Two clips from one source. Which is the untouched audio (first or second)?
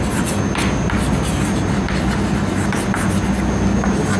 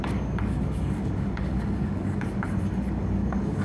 first